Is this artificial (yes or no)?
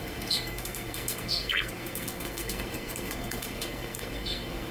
yes